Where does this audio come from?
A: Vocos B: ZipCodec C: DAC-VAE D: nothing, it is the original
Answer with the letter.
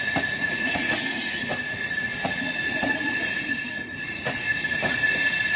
A